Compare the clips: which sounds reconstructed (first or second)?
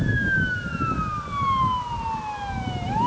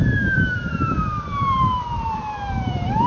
second